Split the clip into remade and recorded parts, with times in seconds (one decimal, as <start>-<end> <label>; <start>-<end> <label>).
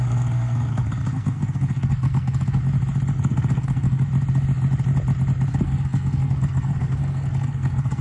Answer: 0.0-2.6 remade; 2.6-3.2 recorded; 3.2-4.1 remade; 4.1-5.5 recorded; 5.5-8.0 remade